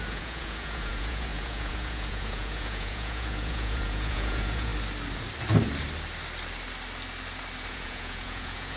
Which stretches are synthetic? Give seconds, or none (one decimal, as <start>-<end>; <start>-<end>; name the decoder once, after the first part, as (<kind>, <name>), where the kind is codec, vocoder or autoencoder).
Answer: 0.0-4.7 (vocoder, Vocos); 7.7-8.8